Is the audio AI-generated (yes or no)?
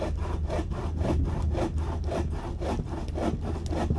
no